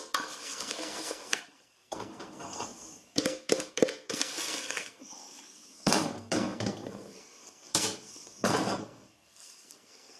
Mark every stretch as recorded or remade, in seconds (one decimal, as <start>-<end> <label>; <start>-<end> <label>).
0.0-10.2 remade